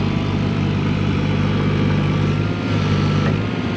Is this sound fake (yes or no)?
yes